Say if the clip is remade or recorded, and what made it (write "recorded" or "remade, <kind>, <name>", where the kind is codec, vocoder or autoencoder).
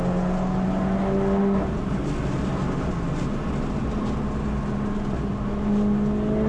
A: recorded